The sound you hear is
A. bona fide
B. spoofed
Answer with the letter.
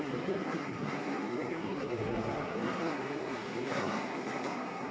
B